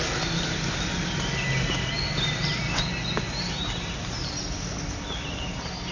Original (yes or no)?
yes